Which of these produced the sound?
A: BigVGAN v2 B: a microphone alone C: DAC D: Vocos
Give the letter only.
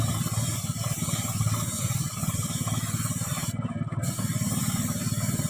B